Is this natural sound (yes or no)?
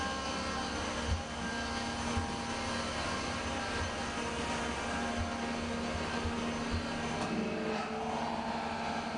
yes